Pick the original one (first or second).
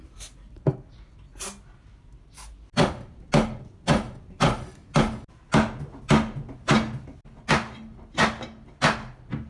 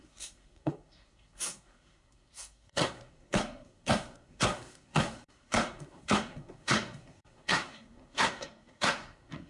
first